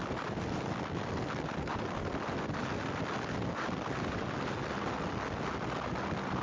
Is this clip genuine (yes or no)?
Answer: yes